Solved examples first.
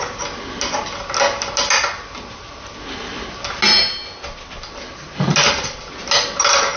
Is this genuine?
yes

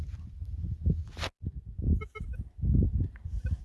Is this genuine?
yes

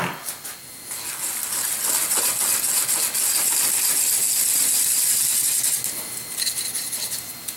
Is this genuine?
yes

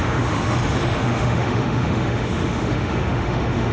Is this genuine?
no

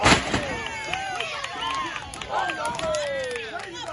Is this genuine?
yes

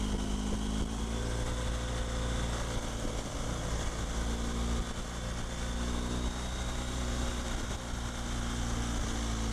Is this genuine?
yes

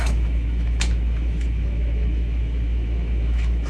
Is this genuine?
no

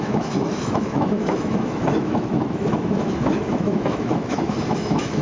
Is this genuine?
no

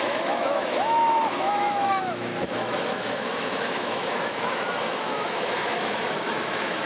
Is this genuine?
no